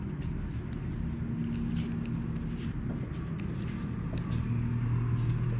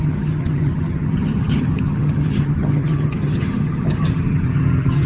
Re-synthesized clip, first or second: second